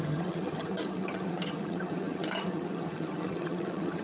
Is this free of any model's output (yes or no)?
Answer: no